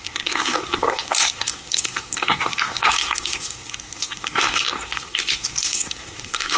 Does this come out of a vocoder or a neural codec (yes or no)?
yes